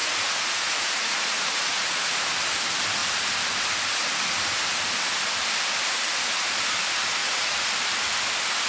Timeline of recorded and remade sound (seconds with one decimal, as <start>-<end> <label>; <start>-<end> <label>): 0.0-2.4 remade; 2.4-7.2 recorded; 7.2-7.7 remade; 7.7-8.7 recorded